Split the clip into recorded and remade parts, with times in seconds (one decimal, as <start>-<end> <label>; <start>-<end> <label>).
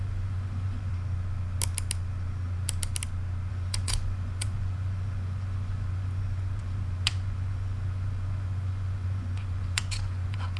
0.0-0.9 remade; 0.9-3.5 recorded; 3.5-10.6 remade